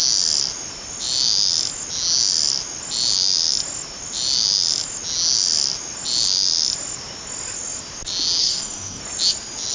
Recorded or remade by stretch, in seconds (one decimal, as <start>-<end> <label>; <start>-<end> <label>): 0.0-8.4 recorded; 8.4-9.0 remade; 9.0-9.7 recorded